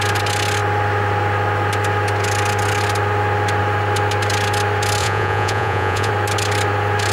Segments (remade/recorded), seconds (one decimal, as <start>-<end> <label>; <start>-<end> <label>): 0.0-5.0 recorded; 5.0-6.1 remade; 6.1-7.1 recorded